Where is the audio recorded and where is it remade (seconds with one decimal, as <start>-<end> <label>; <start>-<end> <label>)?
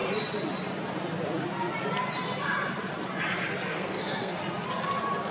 0.0-3.7 recorded; 3.7-4.4 remade; 4.4-5.3 recorded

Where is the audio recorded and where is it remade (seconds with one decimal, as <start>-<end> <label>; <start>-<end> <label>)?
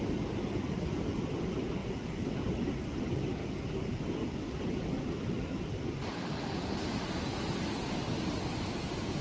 0.0-9.2 recorded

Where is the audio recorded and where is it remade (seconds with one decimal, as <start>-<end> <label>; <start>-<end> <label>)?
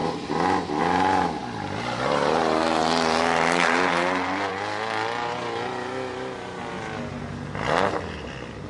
0.0-8.7 recorded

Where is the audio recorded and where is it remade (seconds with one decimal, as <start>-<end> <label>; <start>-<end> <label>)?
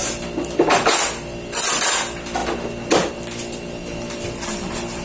0.0-5.0 recorded